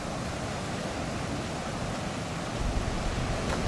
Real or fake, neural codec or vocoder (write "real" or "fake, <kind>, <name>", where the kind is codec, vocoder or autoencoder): real